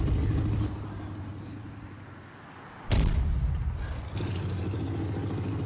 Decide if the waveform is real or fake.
real